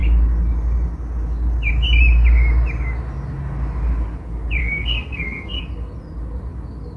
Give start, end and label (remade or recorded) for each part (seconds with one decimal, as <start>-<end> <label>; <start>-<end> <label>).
0.0-4.6 recorded; 4.6-5.6 remade; 5.6-7.0 recorded